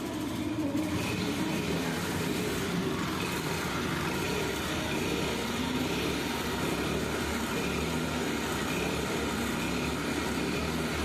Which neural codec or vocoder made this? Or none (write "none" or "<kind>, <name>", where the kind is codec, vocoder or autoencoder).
none